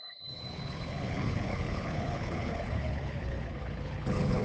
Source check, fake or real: fake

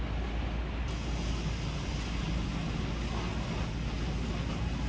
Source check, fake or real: real